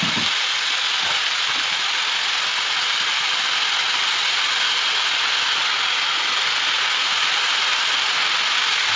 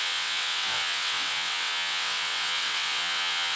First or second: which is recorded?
first